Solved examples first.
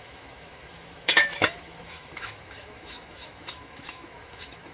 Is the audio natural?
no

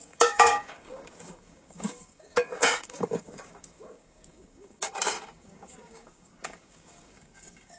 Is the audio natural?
no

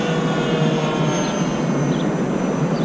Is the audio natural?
yes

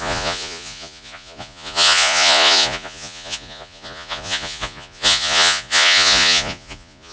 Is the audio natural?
no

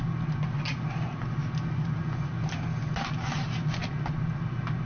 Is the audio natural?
yes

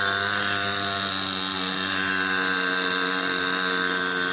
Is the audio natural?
yes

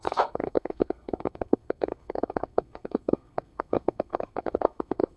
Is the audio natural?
no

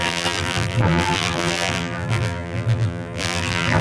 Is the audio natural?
no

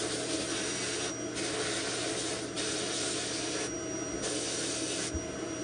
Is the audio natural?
yes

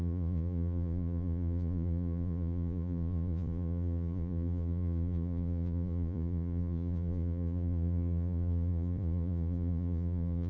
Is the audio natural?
no